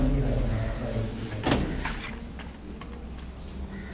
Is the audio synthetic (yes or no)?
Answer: no